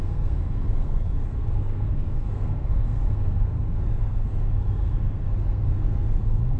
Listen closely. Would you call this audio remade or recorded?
remade